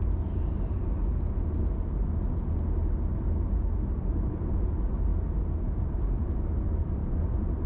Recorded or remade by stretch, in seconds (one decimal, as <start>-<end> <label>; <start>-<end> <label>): 0.0-1.0 remade; 1.0-4.0 recorded; 4.0-5.1 remade; 5.1-5.8 recorded; 5.8-7.7 remade

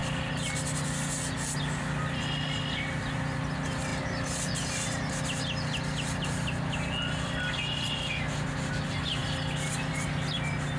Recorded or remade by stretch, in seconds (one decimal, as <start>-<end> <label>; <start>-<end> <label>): 0.0-10.8 recorded

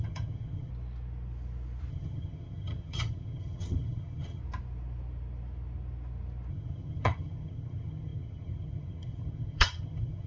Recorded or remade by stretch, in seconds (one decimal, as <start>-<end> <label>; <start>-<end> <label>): 0.0-0.7 remade; 0.7-1.9 recorded; 1.9-4.4 remade; 4.4-6.5 recorded; 6.5-10.3 remade

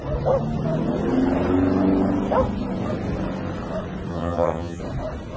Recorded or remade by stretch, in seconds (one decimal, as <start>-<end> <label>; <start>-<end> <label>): 0.0-4.1 recorded; 4.1-4.8 remade; 4.8-5.4 recorded